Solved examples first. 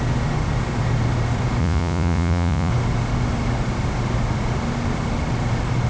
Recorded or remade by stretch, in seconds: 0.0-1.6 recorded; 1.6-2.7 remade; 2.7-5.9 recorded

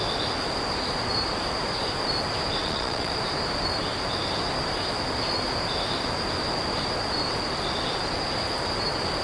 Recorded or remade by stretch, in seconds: 0.0-2.6 recorded; 2.6-3.1 remade; 3.1-9.2 recorded

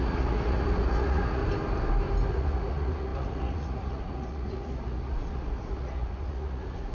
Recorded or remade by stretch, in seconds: 0.0-1.4 remade; 1.4-2.3 recorded; 2.3-6.9 remade

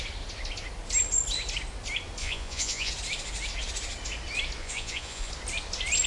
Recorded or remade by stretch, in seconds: 0.0-2.2 recorded; 2.2-2.9 remade; 2.9-4.6 recorded; 4.6-5.3 remade; 5.3-6.1 recorded